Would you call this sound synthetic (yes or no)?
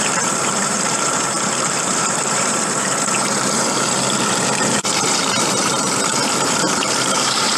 yes